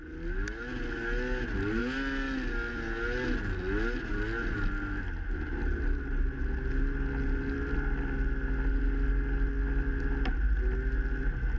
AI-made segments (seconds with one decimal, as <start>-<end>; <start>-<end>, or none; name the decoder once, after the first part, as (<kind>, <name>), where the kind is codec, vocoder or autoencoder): none